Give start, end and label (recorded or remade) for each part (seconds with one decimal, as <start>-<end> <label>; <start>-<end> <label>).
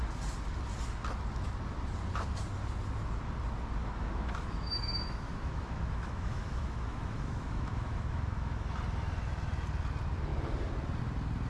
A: 0.0-3.8 recorded; 3.8-8.7 remade; 8.7-11.5 recorded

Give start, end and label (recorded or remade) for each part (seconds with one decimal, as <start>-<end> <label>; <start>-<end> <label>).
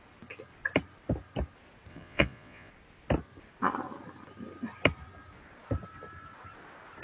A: 0.0-1.9 recorded; 1.9-2.7 remade; 2.7-7.0 recorded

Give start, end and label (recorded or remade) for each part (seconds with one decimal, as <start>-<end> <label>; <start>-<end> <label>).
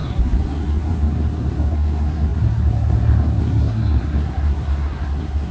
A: 0.0-5.5 remade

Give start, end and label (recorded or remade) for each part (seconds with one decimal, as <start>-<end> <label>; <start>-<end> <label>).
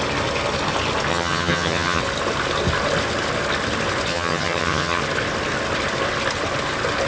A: 0.0-1.1 recorded; 1.1-2.0 remade; 2.0-4.1 recorded; 4.1-5.0 remade; 5.0-7.1 recorded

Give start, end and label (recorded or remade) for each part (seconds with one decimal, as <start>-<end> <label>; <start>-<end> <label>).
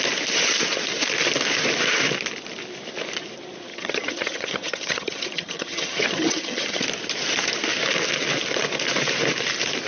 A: 0.0-3.7 recorded; 3.7-6.8 remade; 6.8-9.9 recorded